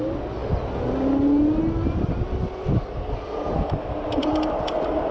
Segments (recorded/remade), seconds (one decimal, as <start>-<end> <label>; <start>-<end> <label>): 0.0-5.1 recorded